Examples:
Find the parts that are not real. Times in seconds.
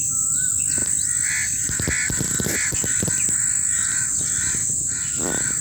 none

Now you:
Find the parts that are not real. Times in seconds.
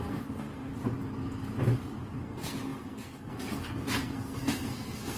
0.0-0.7 (codec, SNAC); 2.2-5.2